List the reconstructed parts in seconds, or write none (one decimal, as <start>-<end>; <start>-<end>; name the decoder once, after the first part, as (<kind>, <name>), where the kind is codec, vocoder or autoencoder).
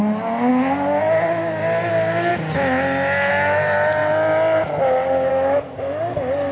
5.3-6.0 (autoencoder, DAC-VAE)